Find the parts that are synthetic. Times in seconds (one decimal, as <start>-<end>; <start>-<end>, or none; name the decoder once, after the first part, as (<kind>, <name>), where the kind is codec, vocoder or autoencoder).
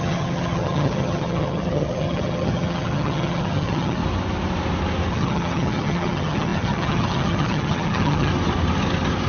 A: 0.0-4.0 (vocoder, HiFi-GAN); 5.1-8.3